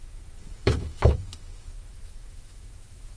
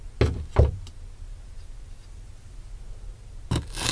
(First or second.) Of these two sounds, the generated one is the first